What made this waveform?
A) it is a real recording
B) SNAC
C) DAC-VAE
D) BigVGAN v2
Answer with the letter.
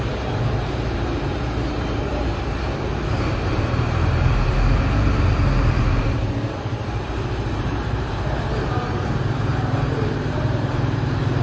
D